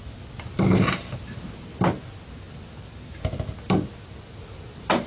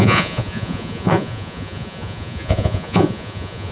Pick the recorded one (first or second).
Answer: first